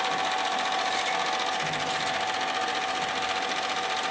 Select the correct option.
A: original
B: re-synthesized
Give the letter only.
A